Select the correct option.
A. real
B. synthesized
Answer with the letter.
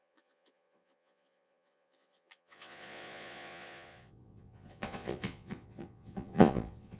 B